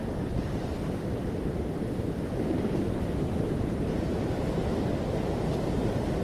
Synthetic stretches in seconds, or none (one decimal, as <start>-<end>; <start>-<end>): 0.0-2.2; 4.1-4.6